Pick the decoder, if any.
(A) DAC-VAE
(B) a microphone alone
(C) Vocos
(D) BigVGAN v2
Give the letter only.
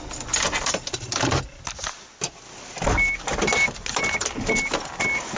B